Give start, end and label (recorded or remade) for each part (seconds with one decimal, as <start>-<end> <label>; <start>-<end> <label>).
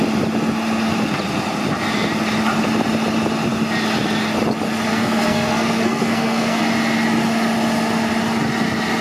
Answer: 0.0-4.9 recorded; 4.9-6.6 remade; 6.6-9.0 recorded